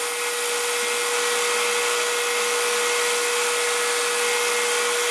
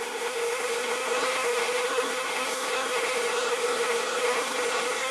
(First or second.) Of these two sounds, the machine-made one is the second